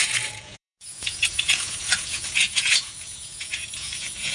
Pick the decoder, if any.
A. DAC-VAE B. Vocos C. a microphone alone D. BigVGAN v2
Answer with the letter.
B